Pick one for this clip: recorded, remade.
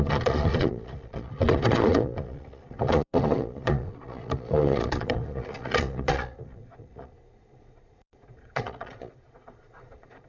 remade